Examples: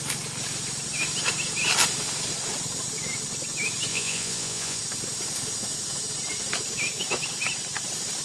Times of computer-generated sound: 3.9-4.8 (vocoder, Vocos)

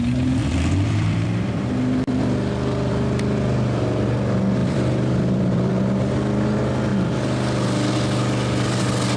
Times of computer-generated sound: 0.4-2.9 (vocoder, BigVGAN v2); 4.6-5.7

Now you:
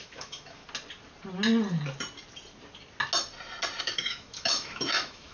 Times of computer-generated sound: 0.0-0.6 (autoencoder, DAC-VAE); 3.8-5.3

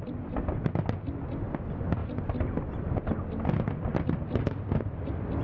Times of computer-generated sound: none